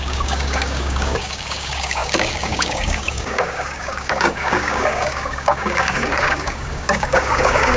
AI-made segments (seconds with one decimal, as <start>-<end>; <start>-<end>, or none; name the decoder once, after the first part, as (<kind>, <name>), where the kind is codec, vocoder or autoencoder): 0.0-7.8 (codec, DAC)